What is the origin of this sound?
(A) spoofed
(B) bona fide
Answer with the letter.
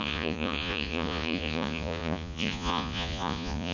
A